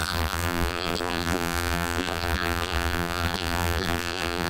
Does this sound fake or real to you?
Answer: fake